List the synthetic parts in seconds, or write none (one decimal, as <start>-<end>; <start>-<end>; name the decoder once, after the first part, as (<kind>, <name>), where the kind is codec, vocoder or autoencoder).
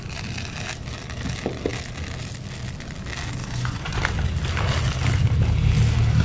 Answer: 3.4-4.0 (vocoder, Vocos)